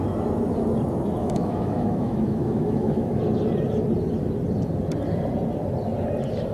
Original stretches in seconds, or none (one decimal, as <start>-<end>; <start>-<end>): 0.0-1.2; 3.2-6.5